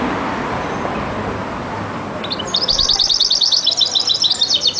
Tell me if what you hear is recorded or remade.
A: recorded